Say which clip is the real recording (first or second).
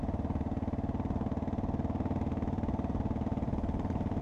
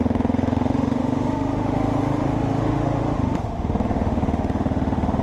first